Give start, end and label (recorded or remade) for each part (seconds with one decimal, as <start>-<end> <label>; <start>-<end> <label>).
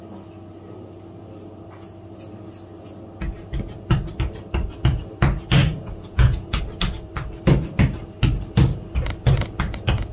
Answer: 0.0-5.6 recorded; 5.6-6.6 remade; 6.6-10.1 recorded